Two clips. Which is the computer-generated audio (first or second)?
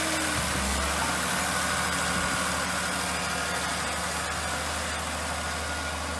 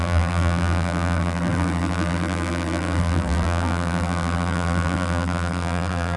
second